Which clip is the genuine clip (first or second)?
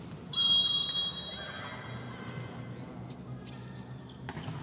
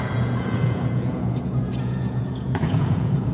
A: first